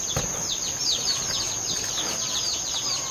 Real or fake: real